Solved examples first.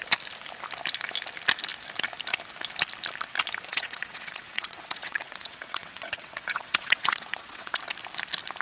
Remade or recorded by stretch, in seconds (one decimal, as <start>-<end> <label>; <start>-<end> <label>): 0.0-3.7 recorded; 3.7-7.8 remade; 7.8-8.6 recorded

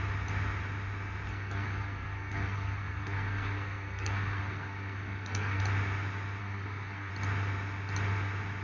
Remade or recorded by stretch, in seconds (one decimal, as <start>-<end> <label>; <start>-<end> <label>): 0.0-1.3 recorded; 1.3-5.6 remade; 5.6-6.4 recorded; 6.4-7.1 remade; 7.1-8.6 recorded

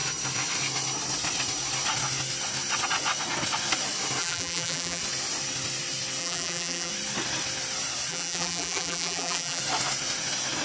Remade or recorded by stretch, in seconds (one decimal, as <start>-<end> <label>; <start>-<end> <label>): 0.0-4.2 recorded; 4.2-5.0 remade; 5.0-6.2 recorded; 6.2-6.9 remade; 6.9-8.1 recorded; 8.1-9.6 remade; 9.6-10.6 recorded

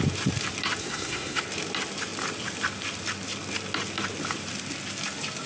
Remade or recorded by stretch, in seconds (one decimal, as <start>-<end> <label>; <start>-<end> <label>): 0.0-0.8 recorded; 0.8-1.4 remade; 1.4-5.5 recorded

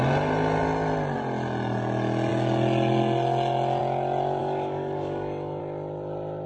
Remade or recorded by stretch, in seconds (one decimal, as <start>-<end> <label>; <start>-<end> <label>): 0.0-4.4 recorded; 4.4-5.6 remade; 5.6-6.5 recorded